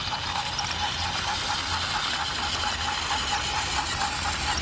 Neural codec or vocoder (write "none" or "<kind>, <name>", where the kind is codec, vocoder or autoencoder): none